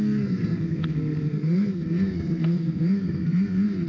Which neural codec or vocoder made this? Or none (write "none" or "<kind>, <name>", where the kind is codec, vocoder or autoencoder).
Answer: codec, SNAC